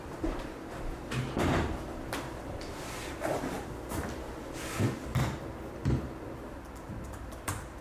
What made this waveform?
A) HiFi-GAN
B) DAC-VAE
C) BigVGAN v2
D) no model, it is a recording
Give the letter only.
C